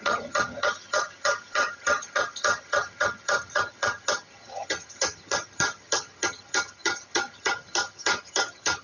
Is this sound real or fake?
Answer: fake